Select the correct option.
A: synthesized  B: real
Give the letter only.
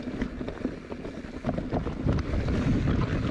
B